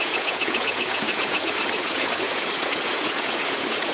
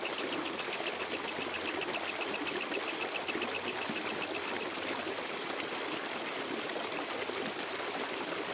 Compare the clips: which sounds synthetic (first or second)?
first